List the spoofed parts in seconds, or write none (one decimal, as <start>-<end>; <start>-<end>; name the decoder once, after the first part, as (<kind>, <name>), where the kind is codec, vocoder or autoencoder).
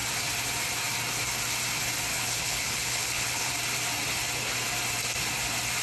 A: 2.1-3.5 (codec, HILCodec)